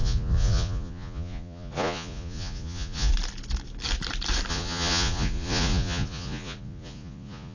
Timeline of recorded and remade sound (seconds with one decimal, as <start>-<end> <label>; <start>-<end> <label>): 0.0-3.1 remade; 3.1-4.5 recorded; 4.5-7.5 remade